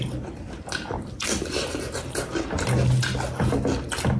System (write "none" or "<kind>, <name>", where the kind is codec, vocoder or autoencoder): none